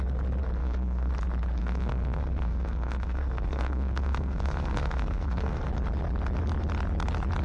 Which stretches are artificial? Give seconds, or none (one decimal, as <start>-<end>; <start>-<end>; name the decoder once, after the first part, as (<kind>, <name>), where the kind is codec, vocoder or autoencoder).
0.6-1.1 (codec, SNAC); 1.6-5.6